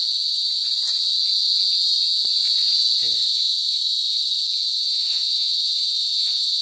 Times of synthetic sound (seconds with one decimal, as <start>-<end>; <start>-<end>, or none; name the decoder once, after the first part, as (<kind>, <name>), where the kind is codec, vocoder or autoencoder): 3.0-4.2 (autoencoder, DAC-VAE); 4.7-6.6

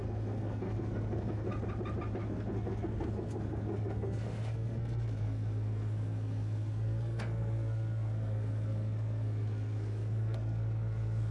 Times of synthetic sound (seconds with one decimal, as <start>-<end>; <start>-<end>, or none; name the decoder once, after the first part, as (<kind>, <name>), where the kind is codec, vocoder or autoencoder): 0.0-1.5 (codec, SNAC); 2.2-11.3

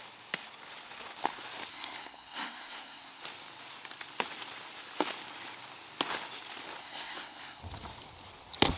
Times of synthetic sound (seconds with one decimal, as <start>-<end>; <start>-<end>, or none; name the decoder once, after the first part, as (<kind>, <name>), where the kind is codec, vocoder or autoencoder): 1.7-3.2 (codec, SNAC); 6.8-7.6

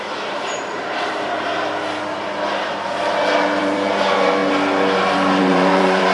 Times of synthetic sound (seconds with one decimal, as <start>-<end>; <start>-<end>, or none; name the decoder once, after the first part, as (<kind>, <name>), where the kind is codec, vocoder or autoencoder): 0.0-1.5 (vocoder, BigVGAN v2); 3.6-4.4; 5.4-6.1

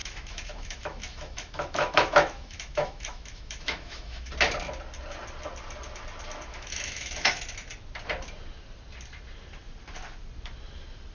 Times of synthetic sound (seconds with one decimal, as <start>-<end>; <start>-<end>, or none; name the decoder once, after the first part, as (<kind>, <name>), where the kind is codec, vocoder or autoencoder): 0.0-4.3 (autoencoder, DAC-VAE); 6.5-7.4

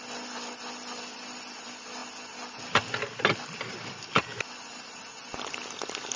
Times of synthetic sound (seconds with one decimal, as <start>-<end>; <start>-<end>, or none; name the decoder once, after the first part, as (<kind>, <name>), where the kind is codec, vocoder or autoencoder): none